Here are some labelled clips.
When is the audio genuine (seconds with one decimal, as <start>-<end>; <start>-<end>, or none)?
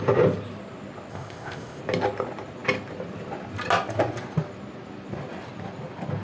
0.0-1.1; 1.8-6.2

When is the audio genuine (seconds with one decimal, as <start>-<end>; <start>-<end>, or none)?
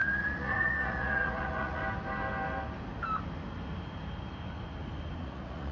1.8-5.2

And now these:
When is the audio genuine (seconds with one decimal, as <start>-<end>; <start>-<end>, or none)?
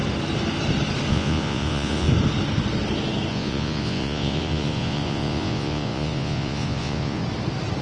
0.0-1.1; 2.1-3.3; 7.2-7.8